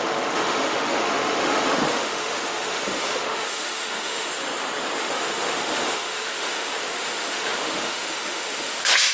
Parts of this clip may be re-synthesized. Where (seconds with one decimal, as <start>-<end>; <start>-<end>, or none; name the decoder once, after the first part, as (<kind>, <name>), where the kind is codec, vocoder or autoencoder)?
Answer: 0.0-4.3 (autoencoder, DAC-VAE); 5.0-9.1